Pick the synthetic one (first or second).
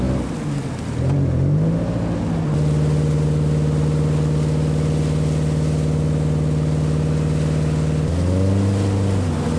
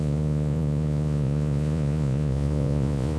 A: second